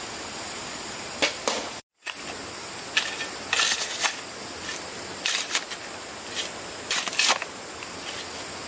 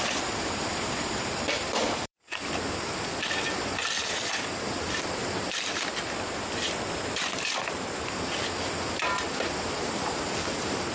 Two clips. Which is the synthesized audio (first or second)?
second